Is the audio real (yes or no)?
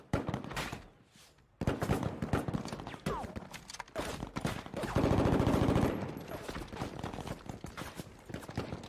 yes